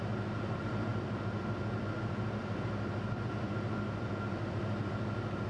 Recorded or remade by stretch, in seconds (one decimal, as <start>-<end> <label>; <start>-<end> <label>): 0.0-5.5 remade